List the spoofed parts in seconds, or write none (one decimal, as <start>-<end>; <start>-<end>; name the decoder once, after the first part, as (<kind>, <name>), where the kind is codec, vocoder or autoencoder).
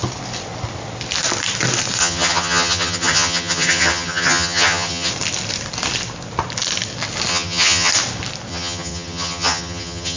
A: 2.0-5.1 (vocoder, HiFi-GAN); 7.3-7.9; 8.5-10.2